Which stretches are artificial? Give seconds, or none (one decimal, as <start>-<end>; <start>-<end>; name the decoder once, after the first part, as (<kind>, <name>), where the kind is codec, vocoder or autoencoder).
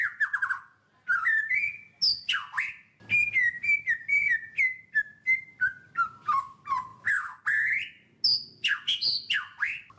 none